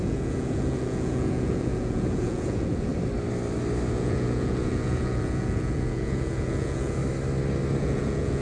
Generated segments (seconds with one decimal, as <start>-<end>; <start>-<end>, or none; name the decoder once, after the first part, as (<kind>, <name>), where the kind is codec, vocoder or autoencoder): 0.0-2.9 (vocoder, Vocos); 3.9-7.0; 7.8-8.4